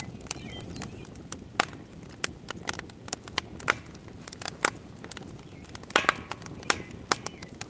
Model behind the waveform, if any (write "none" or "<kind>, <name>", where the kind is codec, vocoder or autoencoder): none